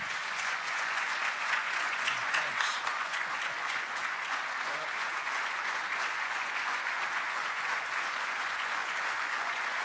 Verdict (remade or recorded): remade